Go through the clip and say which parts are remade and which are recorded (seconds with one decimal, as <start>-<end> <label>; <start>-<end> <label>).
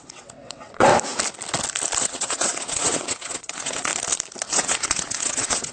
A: 0.0-0.9 remade; 0.9-2.0 recorded; 2.0-3.9 remade; 3.9-4.5 recorded; 4.5-5.7 remade